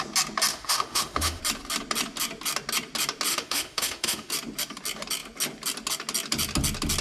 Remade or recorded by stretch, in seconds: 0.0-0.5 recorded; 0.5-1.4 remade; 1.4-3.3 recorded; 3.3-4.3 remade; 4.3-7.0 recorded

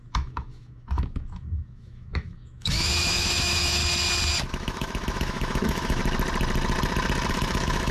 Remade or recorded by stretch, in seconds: 0.0-3.8 remade; 3.8-4.5 recorded; 4.5-6.0 remade; 6.0-7.3 recorded; 7.3-7.9 remade

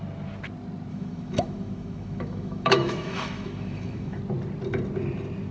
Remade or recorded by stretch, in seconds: 0.0-0.9 recorded; 0.9-4.2 remade; 4.2-5.5 recorded

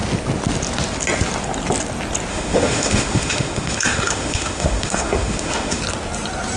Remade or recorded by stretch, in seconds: 0.0-2.3 recorded; 2.3-5.8 remade; 5.8-6.6 recorded

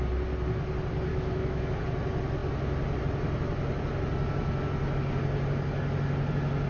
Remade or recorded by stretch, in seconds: 0.0-1.1 recorded; 1.1-1.8 remade; 1.8-6.7 recorded

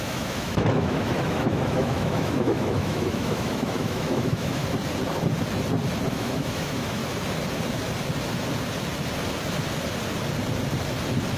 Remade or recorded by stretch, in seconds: 0.0-4.6 remade; 4.6-6.1 recorded; 6.1-7.0 remade; 7.0-11.4 recorded